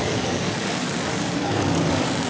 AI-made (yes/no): yes